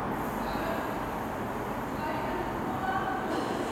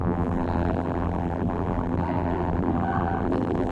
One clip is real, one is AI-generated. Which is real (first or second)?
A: first